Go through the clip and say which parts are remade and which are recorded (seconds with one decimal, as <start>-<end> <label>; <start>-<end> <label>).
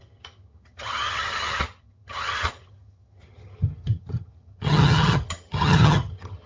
0.0-6.5 remade